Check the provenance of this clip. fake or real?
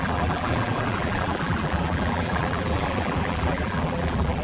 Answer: fake